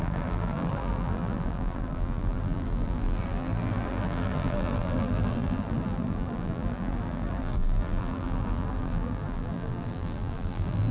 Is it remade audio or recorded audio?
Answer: remade